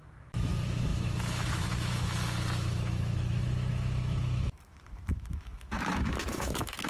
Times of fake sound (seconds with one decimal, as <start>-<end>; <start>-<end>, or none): 0.0-6.9